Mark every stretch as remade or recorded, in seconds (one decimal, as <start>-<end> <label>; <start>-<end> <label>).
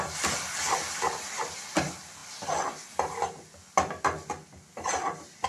0.0-5.5 recorded